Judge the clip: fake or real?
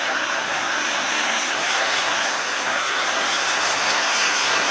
fake